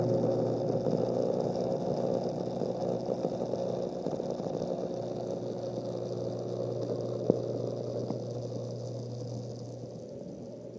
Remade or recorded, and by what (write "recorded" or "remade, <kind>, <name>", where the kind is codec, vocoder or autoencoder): recorded